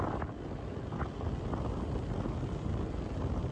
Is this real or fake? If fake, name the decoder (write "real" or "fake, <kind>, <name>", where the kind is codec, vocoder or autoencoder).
real